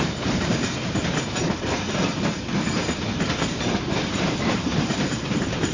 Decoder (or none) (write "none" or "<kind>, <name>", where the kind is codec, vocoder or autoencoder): vocoder, BigVGAN v2